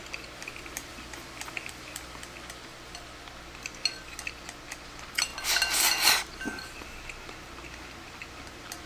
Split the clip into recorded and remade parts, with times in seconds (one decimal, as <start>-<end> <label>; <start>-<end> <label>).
0.0-8.9 recorded